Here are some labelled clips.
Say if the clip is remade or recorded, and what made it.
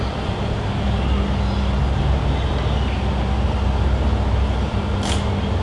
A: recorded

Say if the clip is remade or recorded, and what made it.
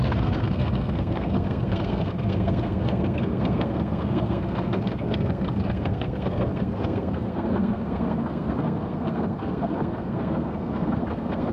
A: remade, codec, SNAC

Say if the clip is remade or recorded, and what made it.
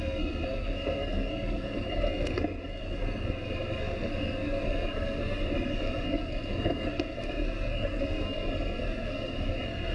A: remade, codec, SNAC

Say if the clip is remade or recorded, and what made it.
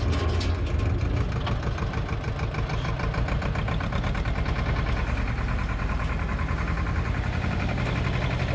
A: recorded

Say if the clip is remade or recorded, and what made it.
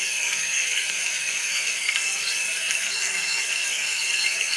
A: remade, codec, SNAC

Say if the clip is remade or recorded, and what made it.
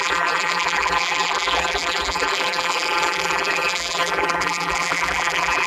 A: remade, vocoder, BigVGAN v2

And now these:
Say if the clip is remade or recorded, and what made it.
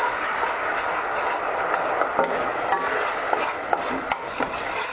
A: recorded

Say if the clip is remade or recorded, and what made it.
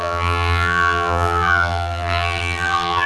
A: remade, vocoder, BigVGAN v2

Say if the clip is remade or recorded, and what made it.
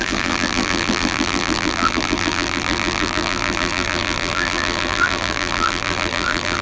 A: remade, vocoder, BigVGAN v2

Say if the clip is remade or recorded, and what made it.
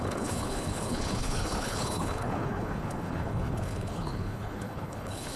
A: remade, codec, HILCodec